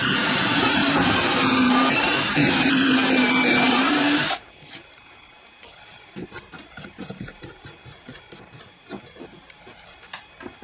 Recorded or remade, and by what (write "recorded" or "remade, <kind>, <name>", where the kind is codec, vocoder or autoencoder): remade, vocoder, BigVGAN v2